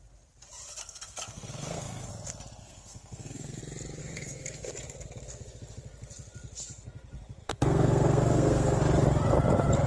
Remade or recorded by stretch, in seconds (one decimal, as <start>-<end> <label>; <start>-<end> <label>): 0.0-0.8 recorded; 0.8-2.1 remade; 2.1-2.6 recorded; 2.6-3.6 remade; 3.6-4.0 recorded; 4.0-4.6 remade; 4.6-7.4 recorded; 7.4-8.8 remade; 8.8-9.9 recorded